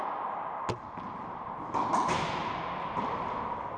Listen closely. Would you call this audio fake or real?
real